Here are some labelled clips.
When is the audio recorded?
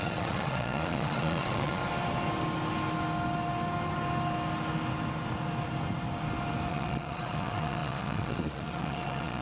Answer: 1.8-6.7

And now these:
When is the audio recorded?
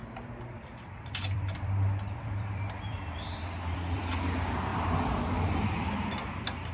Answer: 4.0-4.7; 5.5-6.7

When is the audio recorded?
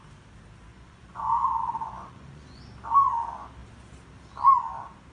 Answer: 0.0-0.7; 2.6-5.1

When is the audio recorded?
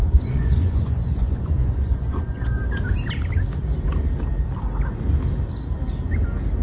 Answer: 2.6-6.6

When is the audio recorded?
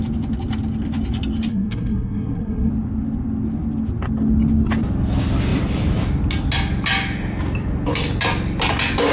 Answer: 0.0-1.5; 2.7-9.1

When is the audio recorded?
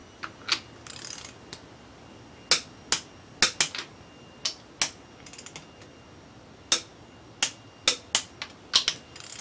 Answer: 0.0-9.4